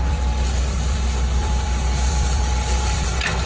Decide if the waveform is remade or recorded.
remade